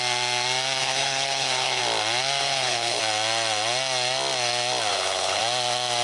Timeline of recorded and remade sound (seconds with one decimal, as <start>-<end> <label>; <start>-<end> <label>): 0.0-0.8 recorded; 0.8-1.8 remade; 1.8-2.4 recorded; 2.4-3.0 remade; 3.0-4.9 recorded; 4.9-5.4 remade; 5.4-6.0 recorded

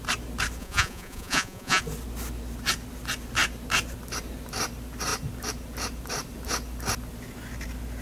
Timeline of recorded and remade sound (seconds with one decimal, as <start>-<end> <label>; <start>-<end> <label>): 0.0-0.6 recorded; 0.6-1.8 remade; 1.8-8.0 recorded

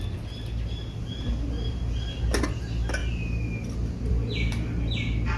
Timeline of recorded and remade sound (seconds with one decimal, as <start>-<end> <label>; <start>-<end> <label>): 0.0-5.4 recorded